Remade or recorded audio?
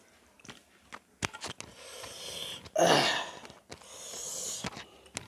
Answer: recorded